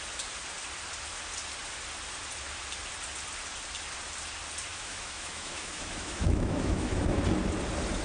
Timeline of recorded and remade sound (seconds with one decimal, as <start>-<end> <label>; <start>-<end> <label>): 0.0-4.7 recorded; 4.7-7.2 remade; 7.2-8.0 recorded